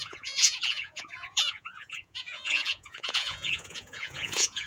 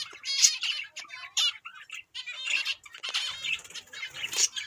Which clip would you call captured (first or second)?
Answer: second